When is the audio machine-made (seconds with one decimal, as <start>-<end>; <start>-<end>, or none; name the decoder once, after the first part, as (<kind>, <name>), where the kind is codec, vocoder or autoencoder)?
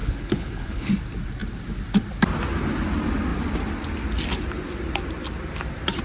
0.0-0.9 (codec, HILCodec)